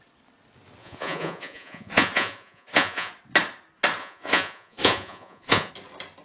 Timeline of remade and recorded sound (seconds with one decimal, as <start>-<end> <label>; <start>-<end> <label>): 0.0-0.8 recorded; 0.8-3.1 remade; 3.1-4.0 recorded; 4.0-5.7 remade; 5.7-6.2 recorded